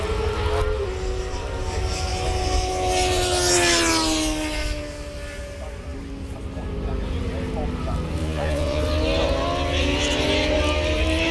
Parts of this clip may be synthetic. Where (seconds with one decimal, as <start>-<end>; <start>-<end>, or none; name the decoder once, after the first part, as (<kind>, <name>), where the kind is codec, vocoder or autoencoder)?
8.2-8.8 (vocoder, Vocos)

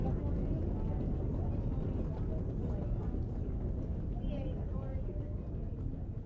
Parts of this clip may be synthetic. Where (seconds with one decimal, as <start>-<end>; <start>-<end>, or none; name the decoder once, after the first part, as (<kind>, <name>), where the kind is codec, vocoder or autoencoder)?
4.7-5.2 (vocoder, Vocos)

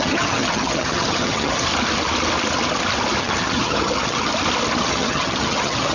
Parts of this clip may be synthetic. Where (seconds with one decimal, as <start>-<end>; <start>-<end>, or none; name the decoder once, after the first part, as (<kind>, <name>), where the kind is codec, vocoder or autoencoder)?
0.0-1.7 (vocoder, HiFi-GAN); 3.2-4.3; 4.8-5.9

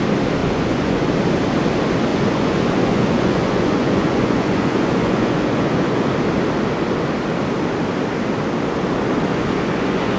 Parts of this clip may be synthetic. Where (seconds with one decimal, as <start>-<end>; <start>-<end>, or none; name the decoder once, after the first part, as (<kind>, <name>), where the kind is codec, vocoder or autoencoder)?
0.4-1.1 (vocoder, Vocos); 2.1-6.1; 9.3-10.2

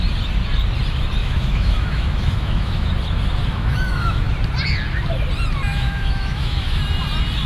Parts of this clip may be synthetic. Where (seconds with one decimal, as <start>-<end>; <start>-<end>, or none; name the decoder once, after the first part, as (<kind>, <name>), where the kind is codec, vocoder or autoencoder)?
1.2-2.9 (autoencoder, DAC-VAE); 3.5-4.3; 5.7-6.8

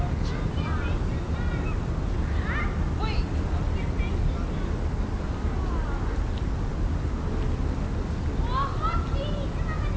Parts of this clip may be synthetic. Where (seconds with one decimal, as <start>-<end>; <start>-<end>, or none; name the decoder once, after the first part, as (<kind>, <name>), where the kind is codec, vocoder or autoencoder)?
6.7-7.3 (vocoder, BigVGAN v2)

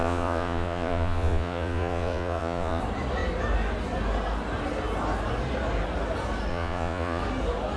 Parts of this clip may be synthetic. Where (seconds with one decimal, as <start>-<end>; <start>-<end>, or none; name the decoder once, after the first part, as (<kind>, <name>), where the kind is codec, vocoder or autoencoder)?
0.0-2.8 (vocoder, Vocos); 6.5-7.2

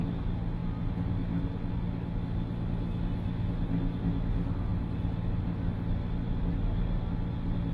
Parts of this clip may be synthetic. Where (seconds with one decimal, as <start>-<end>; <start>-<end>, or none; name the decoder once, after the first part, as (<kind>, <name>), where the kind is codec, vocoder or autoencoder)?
none